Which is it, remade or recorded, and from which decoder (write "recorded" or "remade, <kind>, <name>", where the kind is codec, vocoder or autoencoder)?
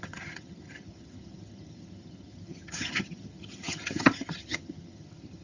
remade, vocoder, HiFi-GAN